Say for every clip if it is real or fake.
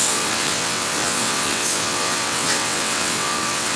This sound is fake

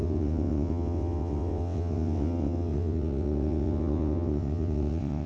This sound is fake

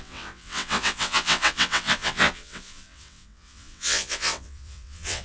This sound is fake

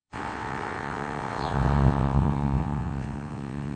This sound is fake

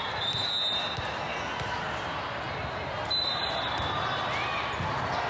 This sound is real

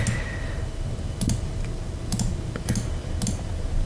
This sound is real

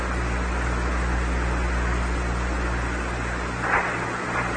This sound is real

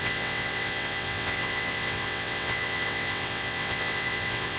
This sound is fake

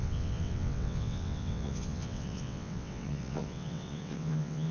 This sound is fake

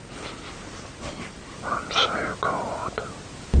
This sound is real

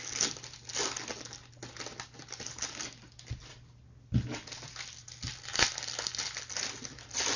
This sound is real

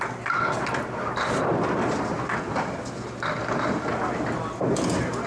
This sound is real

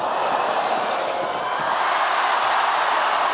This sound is real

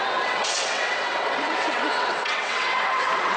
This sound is fake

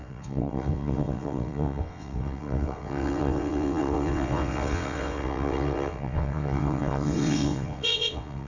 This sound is fake